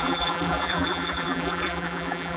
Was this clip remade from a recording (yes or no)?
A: yes